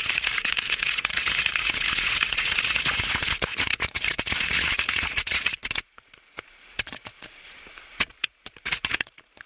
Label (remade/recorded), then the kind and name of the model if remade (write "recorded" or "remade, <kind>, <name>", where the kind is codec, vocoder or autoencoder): remade, vocoder, Vocos